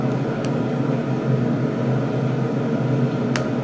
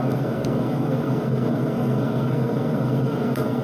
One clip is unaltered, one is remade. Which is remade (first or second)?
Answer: second